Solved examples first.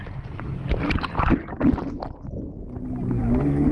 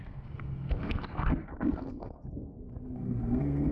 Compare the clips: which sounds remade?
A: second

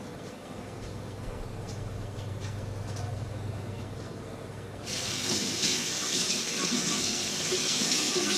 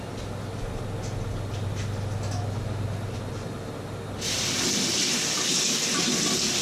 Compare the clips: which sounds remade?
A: first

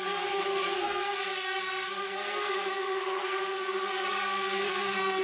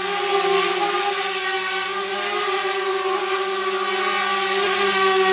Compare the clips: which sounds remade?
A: first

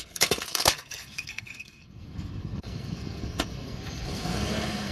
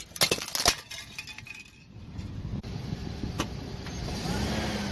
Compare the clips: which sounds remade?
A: first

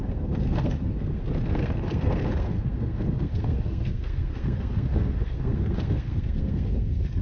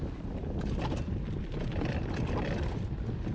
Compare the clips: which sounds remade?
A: first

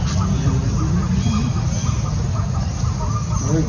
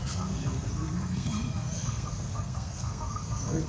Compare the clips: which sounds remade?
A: second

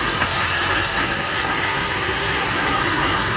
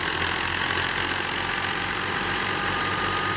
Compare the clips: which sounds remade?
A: first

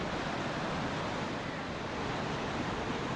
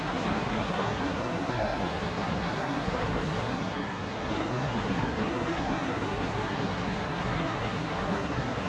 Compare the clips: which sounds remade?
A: second